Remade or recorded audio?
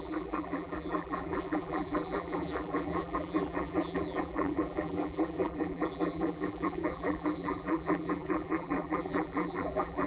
remade